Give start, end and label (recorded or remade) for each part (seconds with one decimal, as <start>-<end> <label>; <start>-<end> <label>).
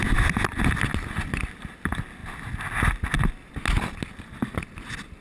0.0-5.2 recorded